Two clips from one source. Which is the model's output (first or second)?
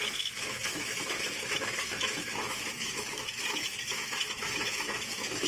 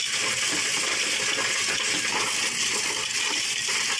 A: first